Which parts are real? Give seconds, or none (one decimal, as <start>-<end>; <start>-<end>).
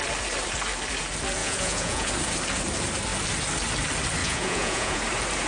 0.0-1.4; 2.1-4.2; 5.0-5.5